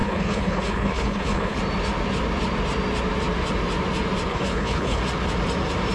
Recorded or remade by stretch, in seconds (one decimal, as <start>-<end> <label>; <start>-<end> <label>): 0.0-1.6 remade; 1.6-4.3 recorded; 4.3-5.0 remade; 5.0-5.9 recorded